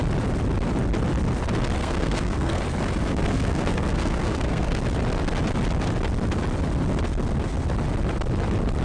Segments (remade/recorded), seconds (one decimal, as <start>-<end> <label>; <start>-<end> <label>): 0.0-1.8 recorded; 1.8-2.6 remade; 2.6-3.0 recorded; 3.0-4.8 remade; 4.8-8.8 recorded